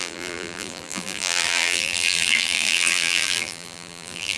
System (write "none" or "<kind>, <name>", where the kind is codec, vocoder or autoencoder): vocoder, BigVGAN v2